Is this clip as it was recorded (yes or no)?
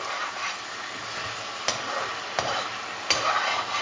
yes